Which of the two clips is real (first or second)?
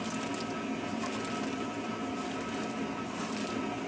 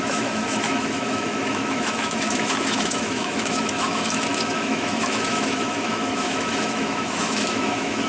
first